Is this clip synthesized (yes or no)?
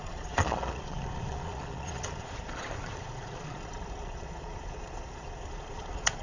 yes